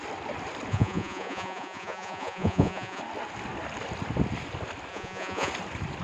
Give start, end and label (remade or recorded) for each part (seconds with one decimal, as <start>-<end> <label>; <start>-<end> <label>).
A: 0.0-0.7 recorded; 0.7-3.0 remade; 3.0-4.9 recorded; 4.9-5.5 remade; 5.5-6.0 recorded